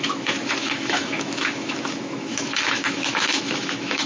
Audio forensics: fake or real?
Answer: fake